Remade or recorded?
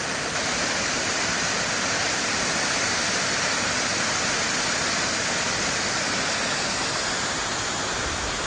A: recorded